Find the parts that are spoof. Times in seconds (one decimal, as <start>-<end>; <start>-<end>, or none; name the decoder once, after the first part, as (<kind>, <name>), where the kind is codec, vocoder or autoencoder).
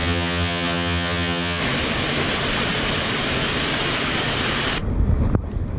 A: 0.0-1.6 (vocoder, HiFi-GAN)